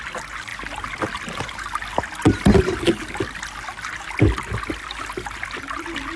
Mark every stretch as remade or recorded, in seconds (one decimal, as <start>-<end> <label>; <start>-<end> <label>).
0.0-6.2 recorded